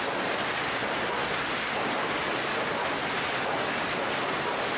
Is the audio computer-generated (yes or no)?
no